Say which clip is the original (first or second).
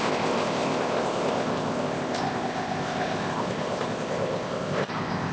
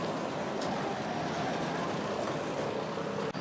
second